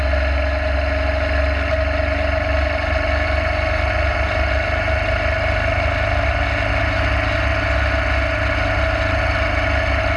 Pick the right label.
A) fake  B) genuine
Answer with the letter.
B